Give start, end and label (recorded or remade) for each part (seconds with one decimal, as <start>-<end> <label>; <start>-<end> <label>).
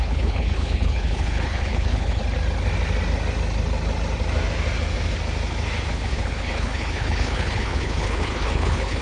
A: 0.0-2.2 remade; 2.2-5.9 recorded; 5.9-9.0 remade